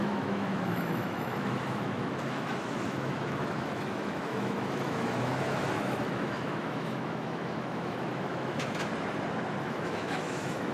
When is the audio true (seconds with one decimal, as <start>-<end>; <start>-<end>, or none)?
8.9-9.6